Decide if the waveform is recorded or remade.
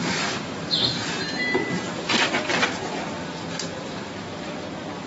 recorded